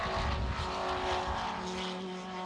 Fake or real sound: real